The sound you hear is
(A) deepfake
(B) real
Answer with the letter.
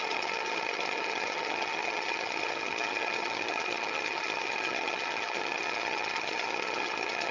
A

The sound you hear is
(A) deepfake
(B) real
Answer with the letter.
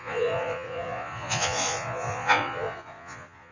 A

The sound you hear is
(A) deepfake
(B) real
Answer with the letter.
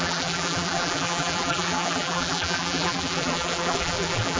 A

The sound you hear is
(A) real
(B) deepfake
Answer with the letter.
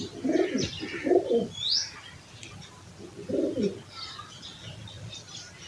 A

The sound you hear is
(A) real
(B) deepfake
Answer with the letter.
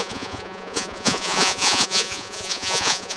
B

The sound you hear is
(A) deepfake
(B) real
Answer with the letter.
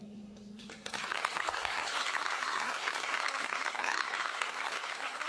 A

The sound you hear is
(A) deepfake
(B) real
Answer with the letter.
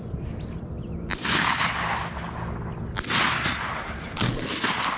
B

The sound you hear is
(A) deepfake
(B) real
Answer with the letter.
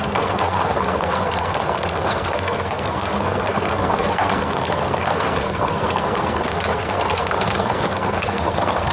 A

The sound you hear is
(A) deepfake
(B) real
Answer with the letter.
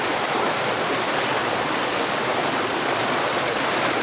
B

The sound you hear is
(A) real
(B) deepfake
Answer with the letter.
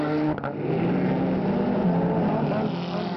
A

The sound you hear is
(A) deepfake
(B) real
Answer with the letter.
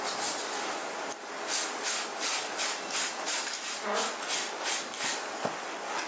B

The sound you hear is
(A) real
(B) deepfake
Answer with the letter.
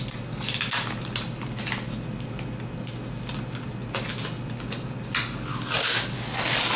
A